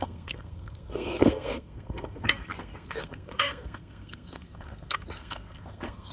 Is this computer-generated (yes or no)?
yes